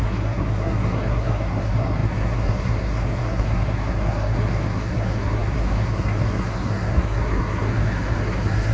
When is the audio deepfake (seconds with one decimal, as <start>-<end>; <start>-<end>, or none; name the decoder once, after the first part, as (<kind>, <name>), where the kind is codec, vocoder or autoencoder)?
0.0-8.7 (codec, SNAC)